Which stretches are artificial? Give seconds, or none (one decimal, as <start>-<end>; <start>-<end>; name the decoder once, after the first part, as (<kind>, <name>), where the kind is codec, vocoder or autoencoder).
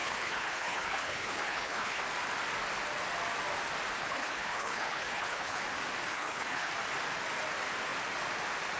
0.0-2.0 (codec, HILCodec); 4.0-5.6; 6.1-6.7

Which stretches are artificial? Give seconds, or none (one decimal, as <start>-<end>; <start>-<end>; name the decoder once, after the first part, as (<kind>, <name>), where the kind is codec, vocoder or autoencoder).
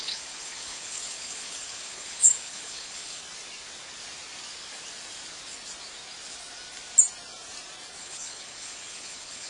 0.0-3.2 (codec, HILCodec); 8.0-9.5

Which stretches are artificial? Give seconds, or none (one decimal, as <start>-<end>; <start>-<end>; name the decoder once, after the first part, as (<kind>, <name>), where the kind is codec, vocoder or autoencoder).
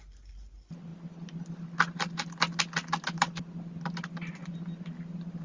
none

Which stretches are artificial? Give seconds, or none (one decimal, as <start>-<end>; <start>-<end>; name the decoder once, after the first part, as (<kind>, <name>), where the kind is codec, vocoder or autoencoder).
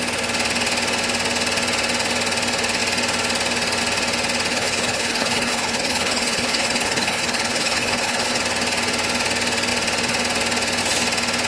4.5-8.4 (codec, HILCodec)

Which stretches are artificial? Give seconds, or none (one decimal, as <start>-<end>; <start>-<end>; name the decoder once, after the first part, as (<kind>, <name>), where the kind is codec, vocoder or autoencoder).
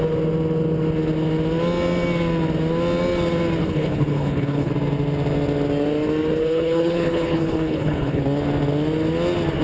3.6-4.7 (codec, HILCodec); 6.4-8.2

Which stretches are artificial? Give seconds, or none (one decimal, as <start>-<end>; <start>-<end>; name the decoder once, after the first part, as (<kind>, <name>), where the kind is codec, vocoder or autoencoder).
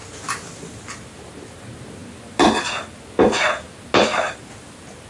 none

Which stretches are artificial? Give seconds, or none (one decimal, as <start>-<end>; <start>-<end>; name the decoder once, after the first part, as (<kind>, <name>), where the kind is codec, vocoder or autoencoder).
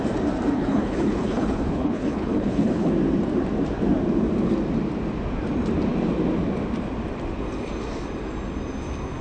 0.5-2.9 (codec, HILCodec)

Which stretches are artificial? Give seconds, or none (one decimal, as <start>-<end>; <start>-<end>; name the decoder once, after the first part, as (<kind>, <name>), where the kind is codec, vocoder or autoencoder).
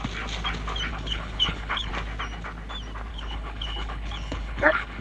0.9-1.9 (codec, HILCodec); 3.1-5.0